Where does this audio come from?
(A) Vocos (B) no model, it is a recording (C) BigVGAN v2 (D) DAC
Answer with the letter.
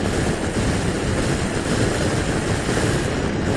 B